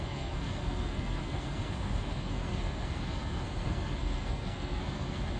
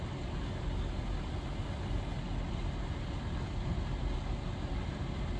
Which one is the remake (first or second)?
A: first